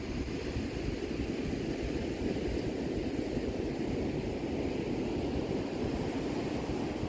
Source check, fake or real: real